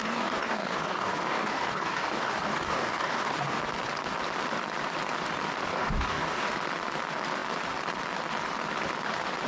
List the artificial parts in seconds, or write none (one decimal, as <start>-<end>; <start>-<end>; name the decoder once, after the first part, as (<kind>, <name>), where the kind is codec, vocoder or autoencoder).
0.0-3.6 (codec, DAC); 5.7-6.5